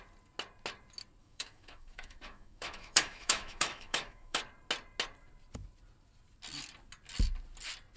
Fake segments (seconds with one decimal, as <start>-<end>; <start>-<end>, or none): 1.2-4.4